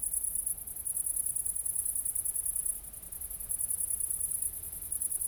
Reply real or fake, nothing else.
real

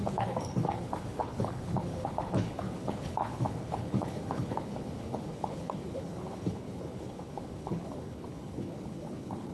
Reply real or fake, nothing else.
fake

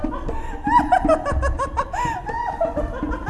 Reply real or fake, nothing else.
real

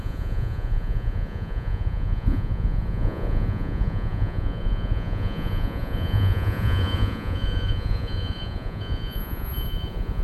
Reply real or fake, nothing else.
fake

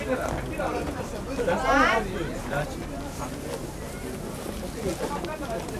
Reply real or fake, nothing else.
real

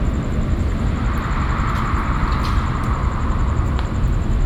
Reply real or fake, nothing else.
fake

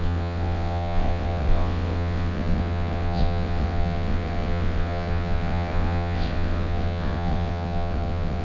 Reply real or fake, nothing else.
fake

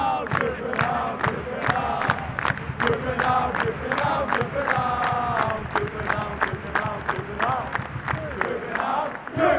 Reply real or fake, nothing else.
real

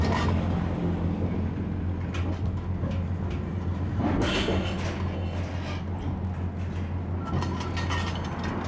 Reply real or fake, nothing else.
real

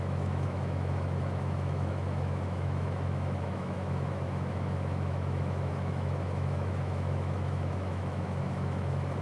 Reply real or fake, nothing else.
fake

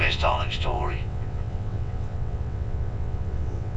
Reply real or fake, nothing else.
fake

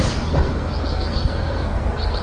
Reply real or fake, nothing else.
fake